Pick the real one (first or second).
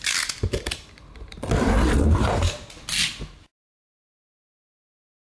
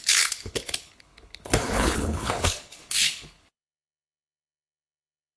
first